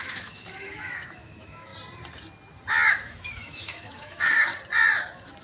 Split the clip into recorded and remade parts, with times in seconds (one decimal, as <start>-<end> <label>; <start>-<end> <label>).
0.0-1.7 remade; 1.7-2.9 recorded; 2.9-4.5 remade; 4.5-5.4 recorded